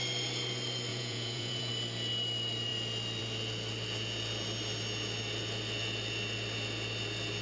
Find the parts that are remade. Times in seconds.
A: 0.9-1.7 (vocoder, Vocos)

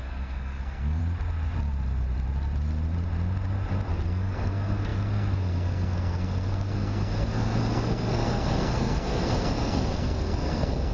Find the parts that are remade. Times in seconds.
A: 0.0-1.0 (codec, SNAC); 3.9-10.9